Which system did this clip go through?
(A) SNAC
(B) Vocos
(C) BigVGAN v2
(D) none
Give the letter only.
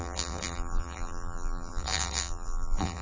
C